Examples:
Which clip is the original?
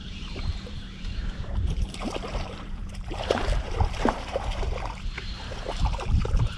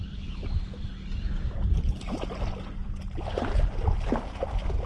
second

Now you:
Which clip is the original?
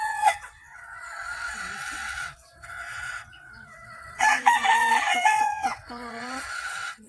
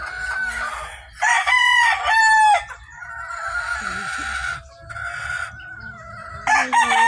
second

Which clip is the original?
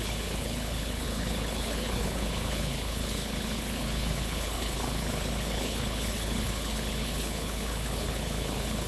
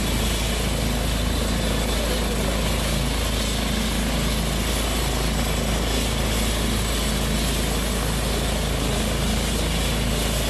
second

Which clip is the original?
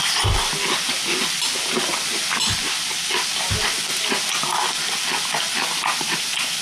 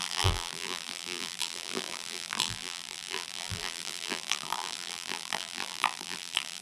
first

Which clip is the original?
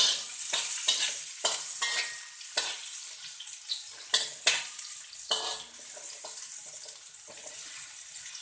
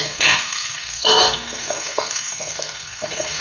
first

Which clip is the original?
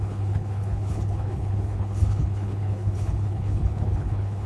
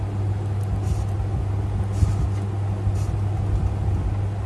second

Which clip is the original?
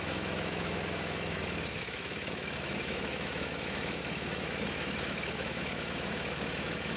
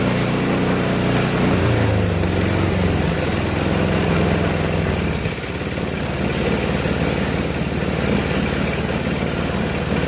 second